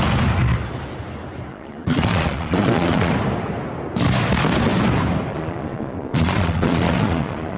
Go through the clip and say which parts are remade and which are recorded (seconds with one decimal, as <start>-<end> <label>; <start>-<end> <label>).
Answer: 0.0-1.5 recorded; 1.5-3.1 remade; 3.1-5.3 recorded; 5.3-7.6 remade